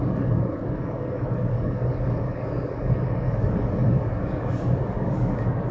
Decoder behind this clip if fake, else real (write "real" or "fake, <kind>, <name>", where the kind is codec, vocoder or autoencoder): fake, codec, DAC